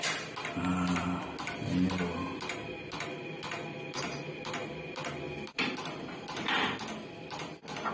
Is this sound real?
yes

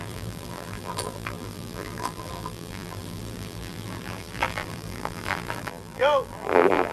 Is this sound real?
no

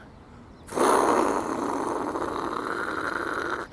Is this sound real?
yes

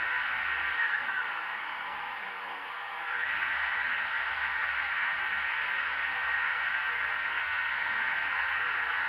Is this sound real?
no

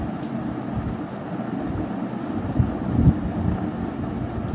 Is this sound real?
yes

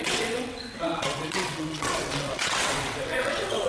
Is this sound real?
no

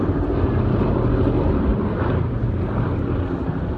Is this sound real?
yes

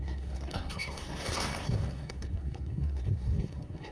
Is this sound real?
no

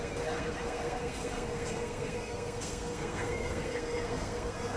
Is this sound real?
no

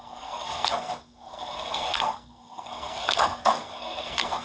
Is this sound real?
no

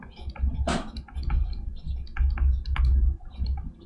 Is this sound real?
yes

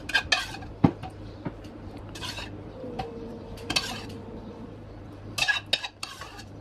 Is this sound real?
yes